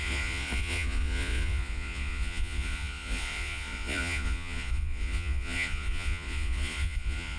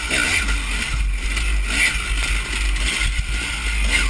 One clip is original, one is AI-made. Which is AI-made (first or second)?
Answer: first